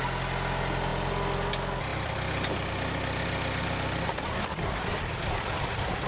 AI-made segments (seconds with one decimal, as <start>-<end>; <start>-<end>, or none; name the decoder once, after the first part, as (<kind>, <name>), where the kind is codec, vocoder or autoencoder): 1.9-2.7 (vocoder, BigVGAN v2); 4.9-6.1